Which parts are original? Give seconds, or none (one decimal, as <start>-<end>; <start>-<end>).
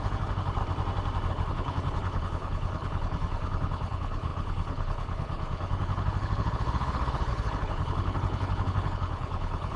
0.6-1.3